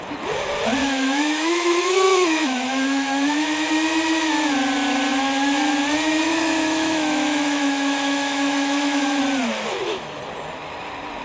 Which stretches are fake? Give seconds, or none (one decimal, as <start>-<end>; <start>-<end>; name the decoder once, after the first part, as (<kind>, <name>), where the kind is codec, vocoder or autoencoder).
0.8-3.7 (autoencoder, DAC-VAE); 6.3-9.2; 9.7-10.2